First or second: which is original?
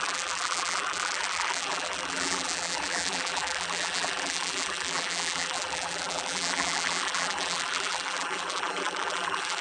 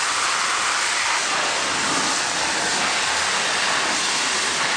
second